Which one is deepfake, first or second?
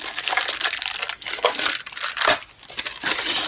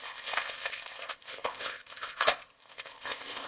second